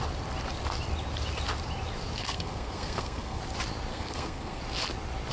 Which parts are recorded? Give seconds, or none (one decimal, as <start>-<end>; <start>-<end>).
0.0-2.2; 3.4-3.9; 4.6-5.3